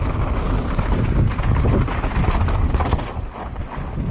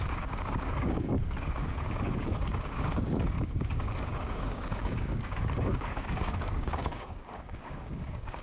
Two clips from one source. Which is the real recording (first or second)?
first